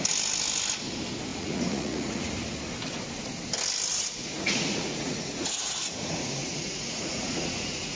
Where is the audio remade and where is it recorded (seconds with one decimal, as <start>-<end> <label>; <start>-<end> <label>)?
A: 0.0-1.3 recorded; 1.3-2.3 remade; 2.3-3.9 recorded; 3.9-8.0 remade